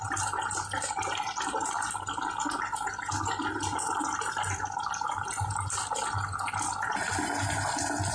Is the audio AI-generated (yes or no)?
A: no